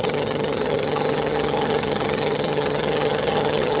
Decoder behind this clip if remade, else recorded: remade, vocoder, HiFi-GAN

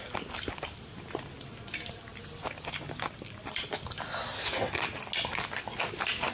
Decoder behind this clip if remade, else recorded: recorded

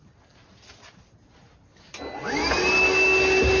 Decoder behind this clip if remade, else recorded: recorded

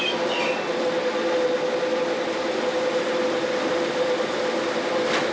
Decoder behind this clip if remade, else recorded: recorded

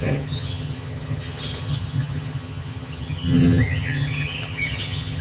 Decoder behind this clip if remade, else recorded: remade, vocoder, HiFi-GAN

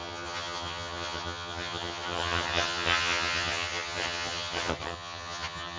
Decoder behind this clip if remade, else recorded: remade, vocoder, HiFi-GAN